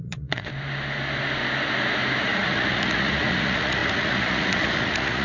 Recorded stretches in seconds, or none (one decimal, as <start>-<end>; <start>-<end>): 0.5-2.2